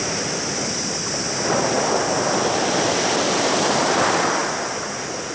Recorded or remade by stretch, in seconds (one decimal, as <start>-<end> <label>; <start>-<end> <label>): 0.0-5.3 recorded